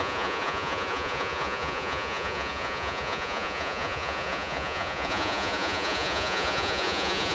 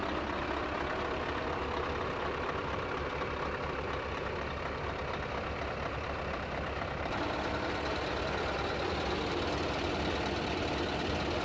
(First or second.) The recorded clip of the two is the second